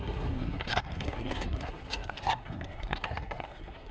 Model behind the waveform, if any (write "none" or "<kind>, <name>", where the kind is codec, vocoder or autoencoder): codec, SNAC